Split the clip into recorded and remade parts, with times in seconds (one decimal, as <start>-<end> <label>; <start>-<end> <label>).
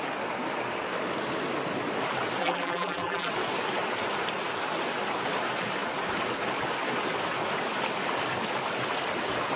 0.0-2.4 recorded; 2.4-3.3 remade; 3.3-9.6 recorded